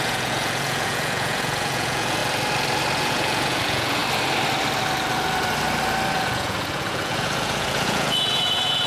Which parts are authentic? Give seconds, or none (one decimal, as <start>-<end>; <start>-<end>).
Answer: 2.2-3.0; 4.0-6.1